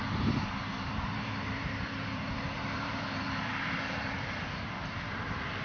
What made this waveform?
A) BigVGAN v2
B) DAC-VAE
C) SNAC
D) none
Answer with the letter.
A